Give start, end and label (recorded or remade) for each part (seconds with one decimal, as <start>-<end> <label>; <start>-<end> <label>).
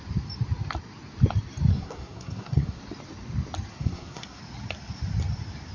0.0-1.7 recorded; 1.7-2.8 remade; 2.8-3.7 recorded; 3.7-4.4 remade; 4.4-5.7 recorded